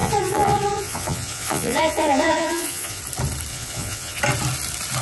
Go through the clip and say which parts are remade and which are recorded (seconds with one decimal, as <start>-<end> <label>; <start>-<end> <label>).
0.0-3.0 remade; 3.0-3.5 recorded; 3.5-4.2 remade; 4.2-5.0 recorded